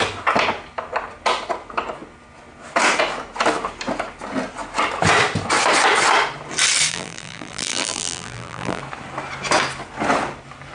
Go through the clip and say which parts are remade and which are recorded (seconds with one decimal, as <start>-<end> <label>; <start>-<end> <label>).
0.0-6.9 recorded; 6.9-8.8 remade; 8.8-10.7 recorded